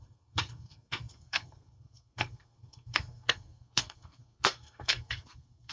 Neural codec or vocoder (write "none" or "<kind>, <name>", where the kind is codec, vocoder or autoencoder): codec, SNAC